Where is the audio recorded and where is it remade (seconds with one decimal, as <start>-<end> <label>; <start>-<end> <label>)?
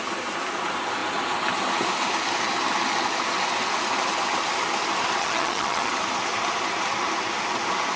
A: 0.0-5.2 recorded; 5.2-5.9 remade; 5.9-8.0 recorded